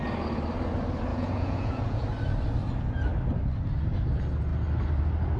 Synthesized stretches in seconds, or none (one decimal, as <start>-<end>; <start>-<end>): 1.1-2.0

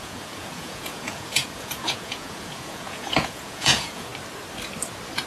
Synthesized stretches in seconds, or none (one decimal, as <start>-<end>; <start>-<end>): 0.0-4.1

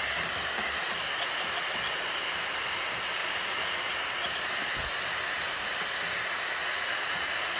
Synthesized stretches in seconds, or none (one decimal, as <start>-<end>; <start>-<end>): 3.2-3.8; 6.6-7.6

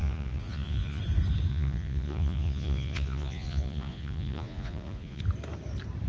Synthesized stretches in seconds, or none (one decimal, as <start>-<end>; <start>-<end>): 0.0-1.0; 1.5-5.2

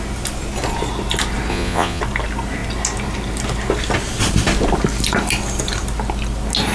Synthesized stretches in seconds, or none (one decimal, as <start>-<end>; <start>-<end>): 1.5-2.0

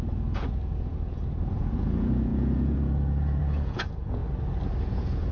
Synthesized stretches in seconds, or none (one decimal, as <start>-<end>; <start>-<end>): 0.0-4.2; 4.8-5.3